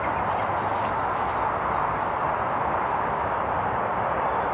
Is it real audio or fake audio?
real